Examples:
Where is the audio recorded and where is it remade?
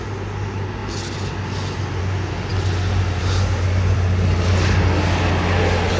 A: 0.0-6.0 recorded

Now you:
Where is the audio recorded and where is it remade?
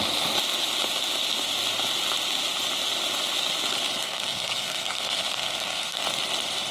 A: 0.0-4.0 recorded; 4.0-6.0 remade; 6.0-6.7 recorded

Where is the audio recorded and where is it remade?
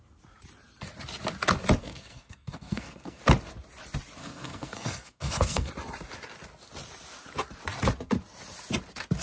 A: 0.0-1.8 recorded; 1.8-3.2 remade; 3.2-4.2 recorded; 4.2-5.7 remade; 5.7-9.2 recorded